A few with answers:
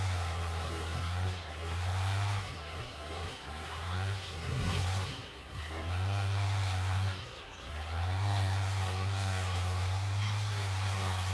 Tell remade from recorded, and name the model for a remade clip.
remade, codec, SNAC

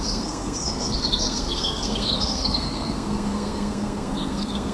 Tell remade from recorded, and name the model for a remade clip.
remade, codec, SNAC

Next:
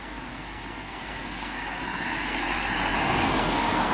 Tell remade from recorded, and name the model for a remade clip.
remade, codec, SNAC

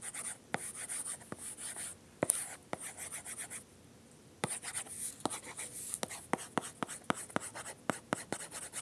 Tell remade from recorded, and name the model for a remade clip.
recorded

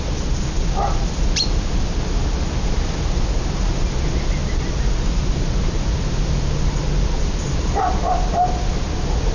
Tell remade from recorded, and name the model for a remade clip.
recorded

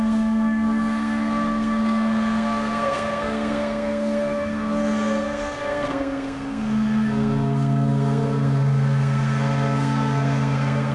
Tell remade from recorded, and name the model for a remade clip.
remade, codec, SNAC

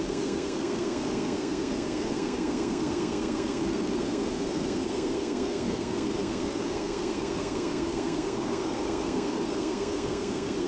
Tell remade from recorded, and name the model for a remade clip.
remade, codec, SNAC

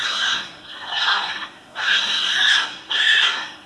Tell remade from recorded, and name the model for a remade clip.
remade, codec, SNAC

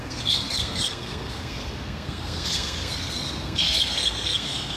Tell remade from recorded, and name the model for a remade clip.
remade, codec, SNAC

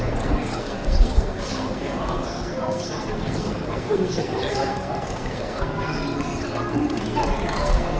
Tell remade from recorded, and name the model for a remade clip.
remade, codec, SNAC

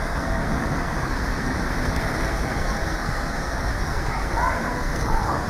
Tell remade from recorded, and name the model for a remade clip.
remade, codec, SNAC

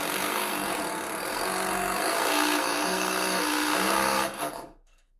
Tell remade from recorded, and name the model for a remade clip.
remade, codec, SNAC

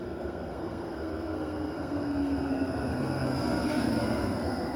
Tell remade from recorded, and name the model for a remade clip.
remade, codec, SNAC